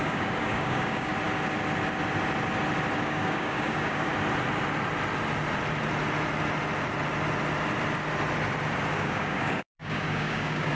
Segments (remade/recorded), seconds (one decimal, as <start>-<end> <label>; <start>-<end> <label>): 0.0-1.1 remade; 1.1-3.0 recorded; 3.0-4.1 remade; 4.1-8.9 recorded; 8.9-10.7 remade